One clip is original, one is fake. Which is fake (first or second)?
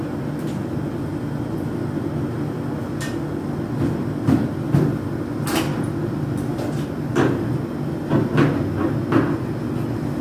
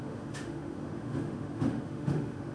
second